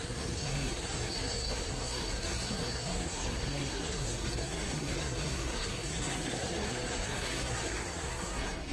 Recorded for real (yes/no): no